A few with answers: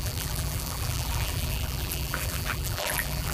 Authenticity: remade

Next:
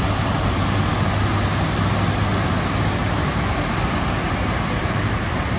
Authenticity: recorded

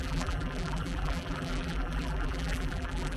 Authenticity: remade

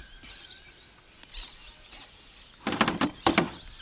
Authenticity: recorded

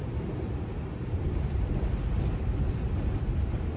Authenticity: recorded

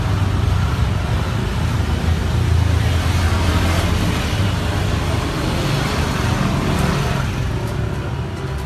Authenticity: recorded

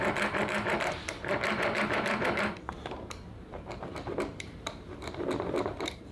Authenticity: remade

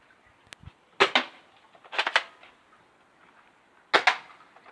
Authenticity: recorded